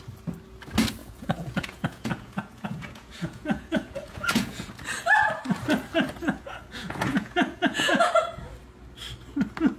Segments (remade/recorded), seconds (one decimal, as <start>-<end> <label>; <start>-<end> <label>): 0.0-1.0 recorded; 1.0-4.7 remade; 4.7-6.2 recorded; 6.2-8.1 remade; 8.1-9.8 recorded